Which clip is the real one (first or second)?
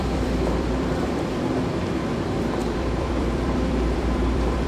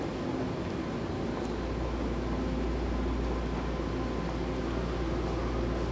second